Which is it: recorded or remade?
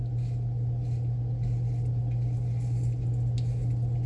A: recorded